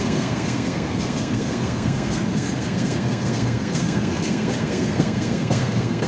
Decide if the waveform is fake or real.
fake